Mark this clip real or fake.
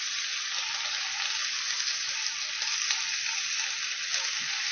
real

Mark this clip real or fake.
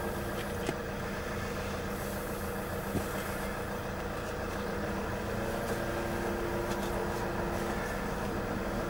real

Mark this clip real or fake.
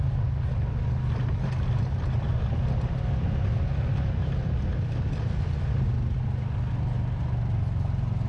real